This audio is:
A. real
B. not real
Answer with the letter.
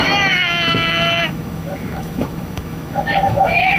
B